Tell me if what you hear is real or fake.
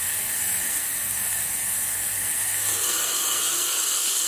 fake